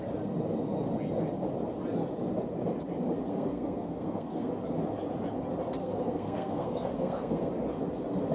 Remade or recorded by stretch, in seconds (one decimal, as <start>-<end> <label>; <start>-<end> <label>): 0.0-3.3 recorded; 3.3-4.5 remade; 4.5-5.8 recorded; 5.8-7.5 remade; 7.5-8.3 recorded